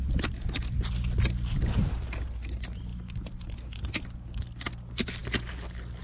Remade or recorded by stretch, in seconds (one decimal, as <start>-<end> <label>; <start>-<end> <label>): 0.0-6.0 recorded